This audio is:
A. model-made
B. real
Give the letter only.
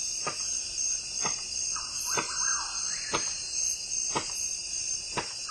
B